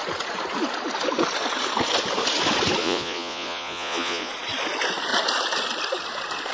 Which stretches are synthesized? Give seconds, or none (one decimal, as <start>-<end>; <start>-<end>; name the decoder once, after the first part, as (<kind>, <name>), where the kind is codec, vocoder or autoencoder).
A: 2.8-4.3 (vocoder, Vocos)